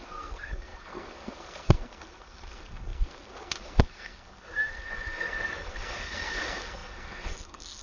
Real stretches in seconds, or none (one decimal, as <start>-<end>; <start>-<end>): none

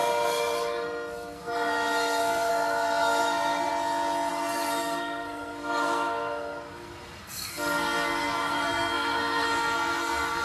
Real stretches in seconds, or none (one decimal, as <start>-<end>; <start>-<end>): 3.7-4.3

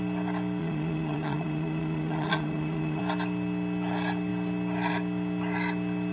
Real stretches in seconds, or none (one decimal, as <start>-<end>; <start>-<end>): 0.0-0.6; 3.0-6.1

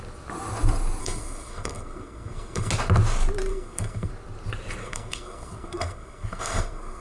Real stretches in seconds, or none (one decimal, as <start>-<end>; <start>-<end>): 0.0-1.0; 2.7-3.5; 4.1-4.8